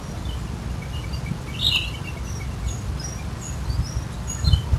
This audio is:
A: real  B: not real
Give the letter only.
A